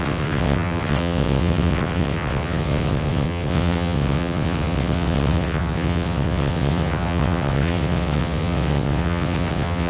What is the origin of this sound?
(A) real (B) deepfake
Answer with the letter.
B